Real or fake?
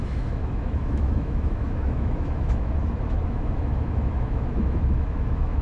fake